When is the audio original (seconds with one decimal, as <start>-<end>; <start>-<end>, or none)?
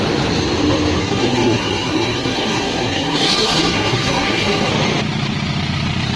0.0-1.0; 4.7-6.2